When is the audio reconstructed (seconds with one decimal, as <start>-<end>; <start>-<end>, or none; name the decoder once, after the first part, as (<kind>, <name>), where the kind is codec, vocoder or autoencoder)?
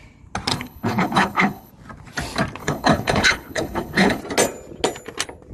0.5-1.7 (codec, HILCodec); 2.6-4.2